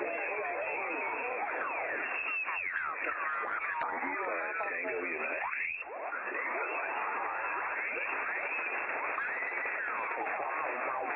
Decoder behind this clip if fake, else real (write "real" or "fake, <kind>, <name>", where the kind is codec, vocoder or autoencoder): real